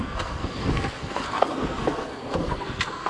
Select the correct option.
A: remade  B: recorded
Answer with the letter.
A